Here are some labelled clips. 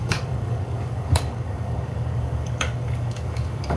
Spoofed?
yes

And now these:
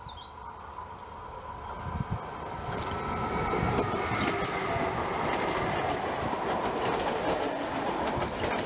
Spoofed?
no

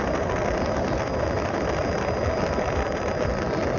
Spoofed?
no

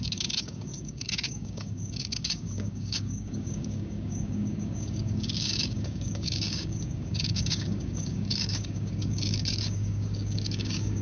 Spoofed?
yes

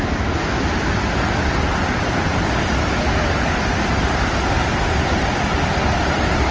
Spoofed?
no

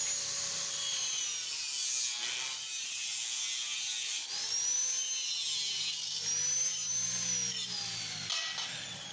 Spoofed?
no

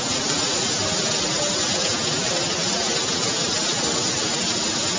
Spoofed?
no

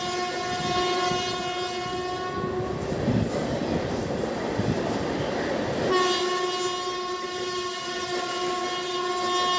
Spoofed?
no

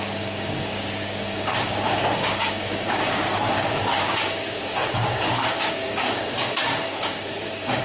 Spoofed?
yes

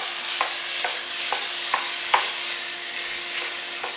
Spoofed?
yes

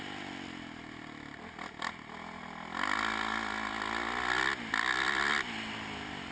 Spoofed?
no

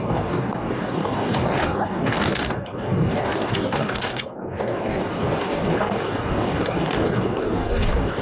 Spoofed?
yes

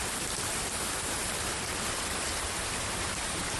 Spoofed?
no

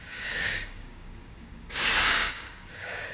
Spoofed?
yes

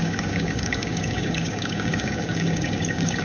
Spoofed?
yes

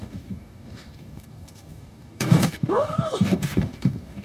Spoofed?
yes